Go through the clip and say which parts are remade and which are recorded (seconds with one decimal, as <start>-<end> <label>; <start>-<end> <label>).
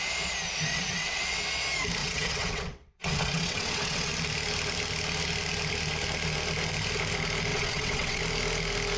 0.0-0.7 recorded; 0.7-1.4 remade; 1.4-2.0 recorded; 2.0-4.1 remade; 4.1-7.5 recorded; 7.5-8.2 remade; 8.2-9.0 recorded